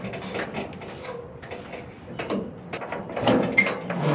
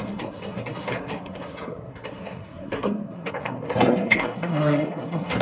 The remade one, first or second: second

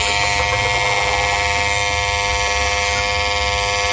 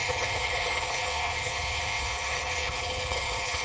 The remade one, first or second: second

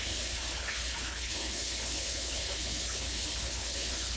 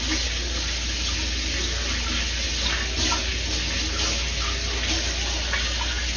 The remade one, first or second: first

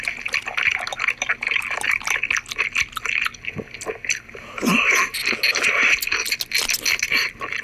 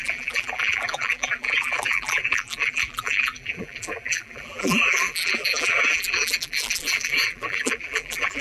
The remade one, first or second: second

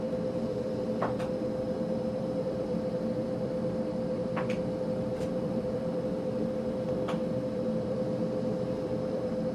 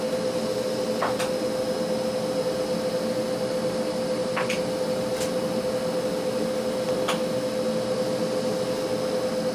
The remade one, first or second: first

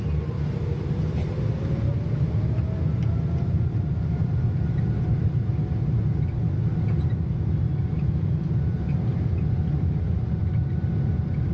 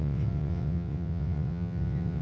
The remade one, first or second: second